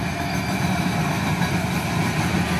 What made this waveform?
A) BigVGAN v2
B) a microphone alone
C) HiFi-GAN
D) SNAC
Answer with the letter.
B